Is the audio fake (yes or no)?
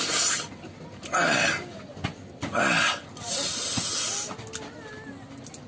no